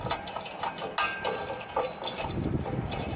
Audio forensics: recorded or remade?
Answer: recorded